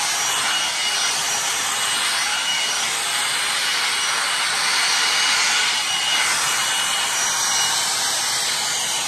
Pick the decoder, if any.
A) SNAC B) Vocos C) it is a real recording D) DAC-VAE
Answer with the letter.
C